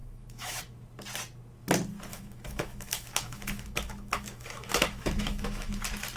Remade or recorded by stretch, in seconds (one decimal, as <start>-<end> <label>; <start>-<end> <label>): 0.0-0.6 remade; 0.6-2.1 recorded; 2.1-5.8 remade; 5.8-6.2 recorded